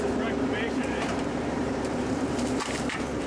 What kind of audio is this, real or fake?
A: fake